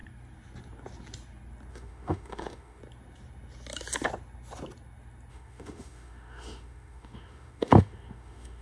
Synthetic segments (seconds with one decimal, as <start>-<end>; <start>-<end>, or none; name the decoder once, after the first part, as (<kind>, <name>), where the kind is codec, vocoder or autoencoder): 1.7-2.8 (autoencoder, DAC-VAE); 5.3-8.6